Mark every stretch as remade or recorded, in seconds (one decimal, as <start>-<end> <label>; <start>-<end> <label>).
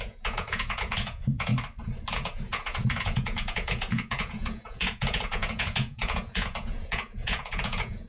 0.0-1.5 remade; 1.5-2.1 recorded; 2.1-8.1 remade